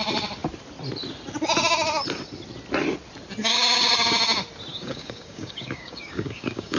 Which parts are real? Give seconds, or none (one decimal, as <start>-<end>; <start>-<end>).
0.0-3.4; 4.1-4.7